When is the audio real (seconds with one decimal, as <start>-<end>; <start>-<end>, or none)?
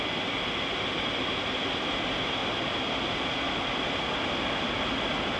0.0-5.4